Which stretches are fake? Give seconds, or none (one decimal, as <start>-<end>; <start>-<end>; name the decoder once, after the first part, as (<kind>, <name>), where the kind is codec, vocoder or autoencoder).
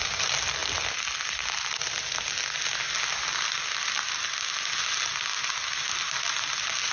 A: none